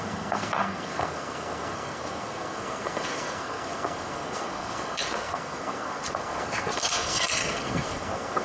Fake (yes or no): yes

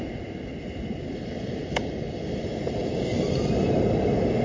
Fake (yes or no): no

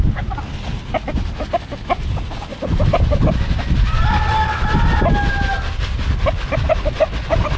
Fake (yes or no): no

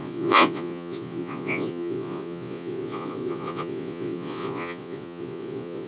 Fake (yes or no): yes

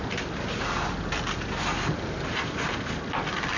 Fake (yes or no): no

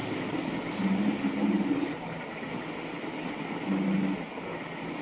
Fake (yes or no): no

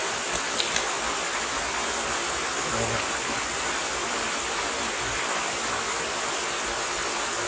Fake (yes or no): no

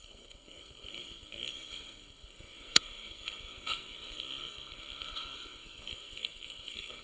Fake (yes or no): yes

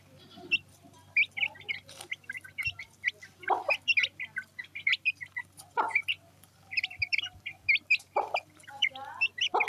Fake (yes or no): yes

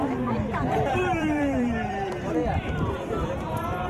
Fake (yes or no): yes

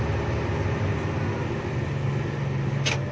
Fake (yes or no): no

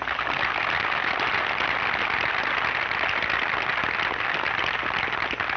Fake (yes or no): no